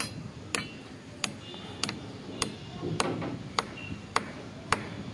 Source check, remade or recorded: recorded